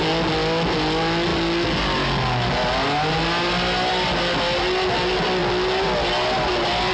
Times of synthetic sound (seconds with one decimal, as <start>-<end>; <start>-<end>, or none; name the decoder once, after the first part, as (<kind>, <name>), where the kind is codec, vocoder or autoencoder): none